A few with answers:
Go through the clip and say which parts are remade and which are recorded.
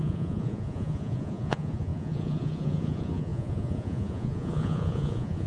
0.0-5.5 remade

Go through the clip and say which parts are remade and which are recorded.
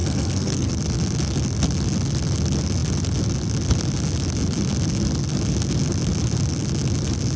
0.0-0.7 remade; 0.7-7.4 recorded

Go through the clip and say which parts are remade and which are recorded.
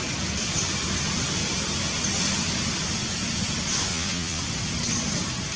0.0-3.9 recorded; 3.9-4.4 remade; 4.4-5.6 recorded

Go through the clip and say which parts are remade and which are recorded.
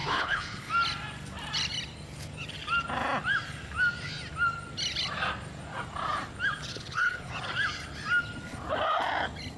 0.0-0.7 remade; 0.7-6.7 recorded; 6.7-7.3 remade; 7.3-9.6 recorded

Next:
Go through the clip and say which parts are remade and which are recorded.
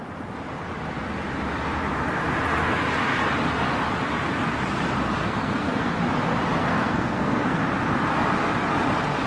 0.0-5.2 recorded; 5.2-5.9 remade; 5.9-6.6 recorded; 6.6-7.6 remade; 7.6-9.3 recorded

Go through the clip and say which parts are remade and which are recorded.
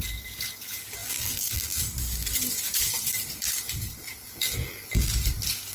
0.0-1.0 recorded; 1.0-1.8 remade; 1.8-4.2 recorded; 4.2-5.1 remade; 5.1-5.7 recorded